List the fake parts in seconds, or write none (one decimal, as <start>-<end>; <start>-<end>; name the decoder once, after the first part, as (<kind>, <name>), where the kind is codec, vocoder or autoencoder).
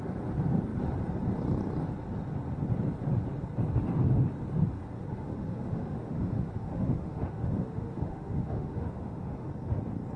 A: 5.1-9.5 (autoencoder, DAC-VAE)